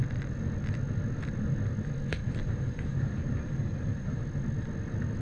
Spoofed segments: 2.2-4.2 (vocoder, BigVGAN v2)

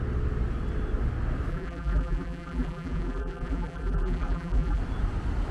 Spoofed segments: 1.5-4.8 (vocoder, BigVGAN v2)